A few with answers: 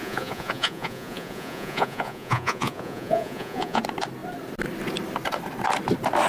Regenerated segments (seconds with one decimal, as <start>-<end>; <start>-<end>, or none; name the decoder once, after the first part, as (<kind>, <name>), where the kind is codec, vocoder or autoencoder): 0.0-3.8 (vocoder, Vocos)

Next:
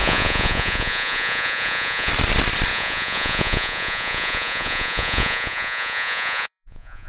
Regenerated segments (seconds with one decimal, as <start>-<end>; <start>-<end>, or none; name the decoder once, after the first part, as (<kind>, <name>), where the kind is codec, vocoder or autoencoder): 0.0-2.1 (vocoder, Vocos); 2.7-7.1

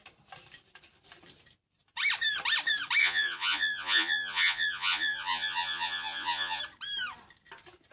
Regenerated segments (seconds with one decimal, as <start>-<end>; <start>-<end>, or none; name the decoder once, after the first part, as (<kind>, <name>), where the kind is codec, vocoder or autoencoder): 3.0-6.6 (vocoder, Vocos)